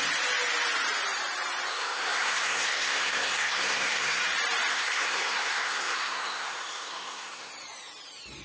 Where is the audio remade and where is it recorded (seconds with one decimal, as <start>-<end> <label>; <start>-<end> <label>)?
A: 0.0-1.7 recorded; 1.7-4.2 remade; 4.2-4.7 recorded; 4.7-7.5 remade; 7.5-8.4 recorded